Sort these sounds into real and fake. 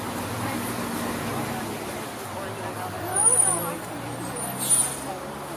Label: real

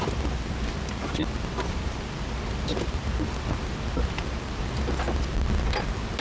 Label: real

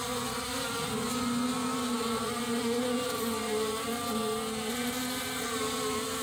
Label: real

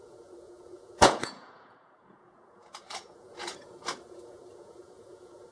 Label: fake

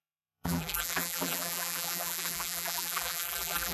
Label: fake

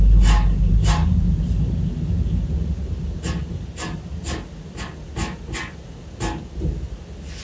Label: real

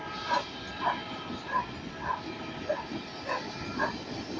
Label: real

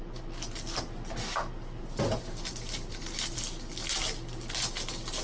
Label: real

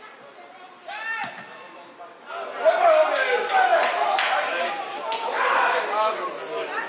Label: real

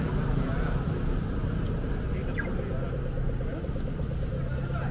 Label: real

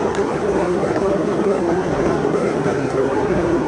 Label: fake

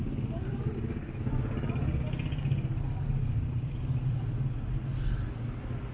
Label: real